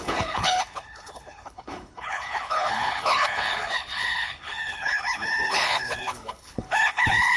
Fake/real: fake